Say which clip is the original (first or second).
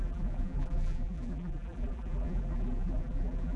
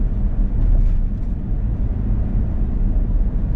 second